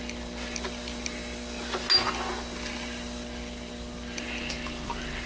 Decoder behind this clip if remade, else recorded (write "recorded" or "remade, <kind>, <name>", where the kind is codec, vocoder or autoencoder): recorded